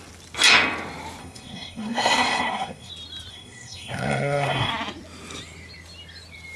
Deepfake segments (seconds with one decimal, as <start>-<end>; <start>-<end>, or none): 1.2-2.9; 3.3-4.7